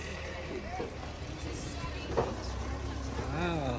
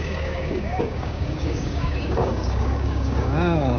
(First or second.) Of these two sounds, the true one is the first